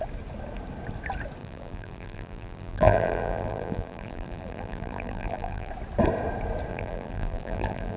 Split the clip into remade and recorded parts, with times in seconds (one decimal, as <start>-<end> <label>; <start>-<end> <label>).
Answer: 0.0-1.4 recorded; 1.4-5.7 remade; 5.7-6.7 recorded; 6.7-8.0 remade